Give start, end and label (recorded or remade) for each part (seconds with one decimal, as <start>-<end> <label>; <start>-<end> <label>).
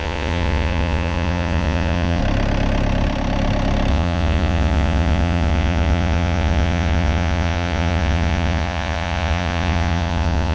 0.0-2.2 remade; 2.2-3.9 recorded; 3.9-10.5 remade